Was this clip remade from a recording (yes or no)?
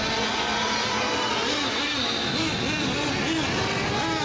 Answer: no